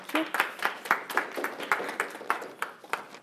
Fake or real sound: real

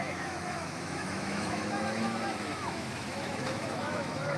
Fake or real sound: fake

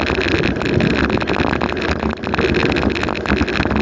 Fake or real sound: real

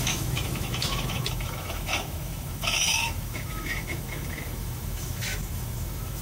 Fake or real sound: fake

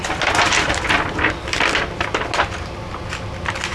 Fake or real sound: real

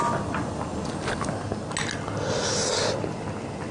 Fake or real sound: real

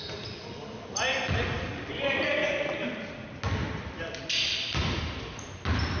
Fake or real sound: real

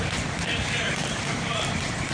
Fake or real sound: real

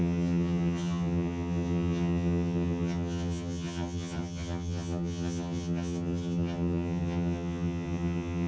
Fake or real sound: fake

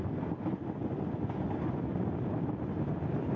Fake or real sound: real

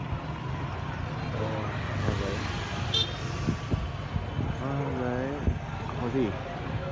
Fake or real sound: real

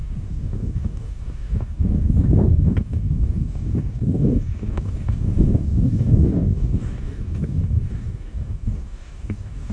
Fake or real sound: fake